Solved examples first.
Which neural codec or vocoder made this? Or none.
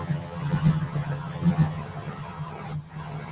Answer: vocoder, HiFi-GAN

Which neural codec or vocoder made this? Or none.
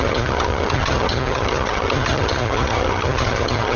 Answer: vocoder, HiFi-GAN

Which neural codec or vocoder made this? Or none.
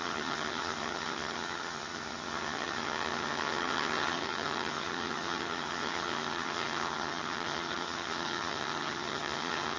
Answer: vocoder, HiFi-GAN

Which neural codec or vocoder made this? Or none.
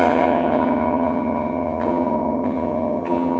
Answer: vocoder, HiFi-GAN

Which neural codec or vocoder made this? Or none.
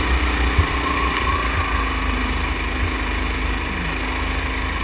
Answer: none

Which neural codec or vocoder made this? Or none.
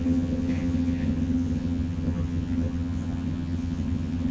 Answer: vocoder, HiFi-GAN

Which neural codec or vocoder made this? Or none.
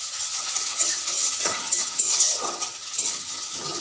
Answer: vocoder, HiFi-GAN